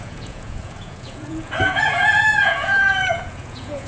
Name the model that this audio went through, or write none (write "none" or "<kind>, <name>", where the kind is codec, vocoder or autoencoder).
vocoder, Vocos